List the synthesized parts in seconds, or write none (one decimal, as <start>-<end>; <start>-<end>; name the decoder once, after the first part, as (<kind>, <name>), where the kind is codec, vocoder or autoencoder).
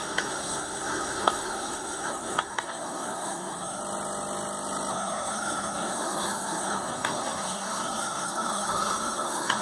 0.0-3.8 (codec, SNAC); 4.9-9.6